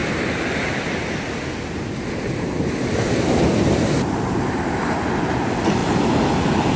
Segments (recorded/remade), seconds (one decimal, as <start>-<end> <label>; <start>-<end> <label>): 0.0-6.8 recorded